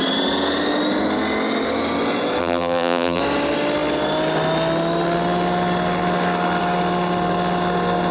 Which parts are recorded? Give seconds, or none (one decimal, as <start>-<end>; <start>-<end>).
0.0-2.4; 3.2-8.1